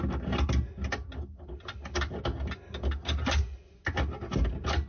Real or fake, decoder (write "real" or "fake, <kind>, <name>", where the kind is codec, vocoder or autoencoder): real